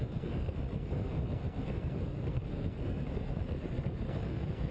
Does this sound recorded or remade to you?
remade